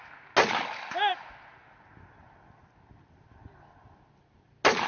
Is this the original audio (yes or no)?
yes